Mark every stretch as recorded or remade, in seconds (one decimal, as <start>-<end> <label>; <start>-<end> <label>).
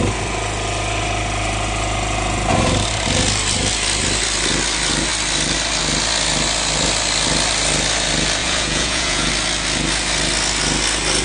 0.0-8.4 recorded; 8.4-9.3 remade; 9.3-11.2 recorded